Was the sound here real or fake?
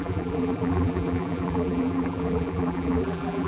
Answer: fake